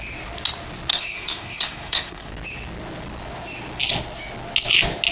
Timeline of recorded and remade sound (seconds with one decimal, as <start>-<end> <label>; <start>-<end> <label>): 0.0-0.9 recorded; 0.9-2.3 remade; 2.3-5.1 recorded